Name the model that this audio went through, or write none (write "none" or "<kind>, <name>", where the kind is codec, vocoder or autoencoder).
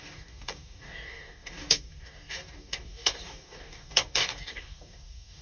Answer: codec, DAC